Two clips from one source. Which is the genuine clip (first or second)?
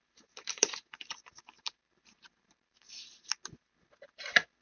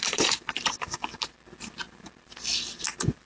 second